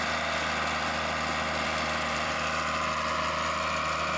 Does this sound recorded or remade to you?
remade